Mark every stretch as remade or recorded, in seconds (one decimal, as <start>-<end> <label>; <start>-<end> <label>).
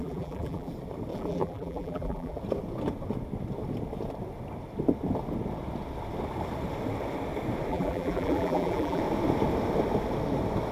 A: 0.0-0.7 remade; 0.7-1.1 recorded; 1.1-2.4 remade; 2.4-7.7 recorded; 7.7-9.0 remade; 9.0-10.7 recorded